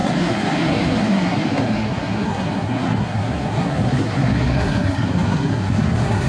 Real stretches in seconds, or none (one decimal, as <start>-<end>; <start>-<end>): none